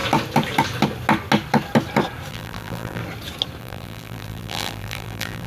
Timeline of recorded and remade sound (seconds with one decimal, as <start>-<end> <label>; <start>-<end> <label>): 0.0-2.3 recorded; 2.3-3.0 remade; 3.0-3.6 recorded; 3.6-5.5 remade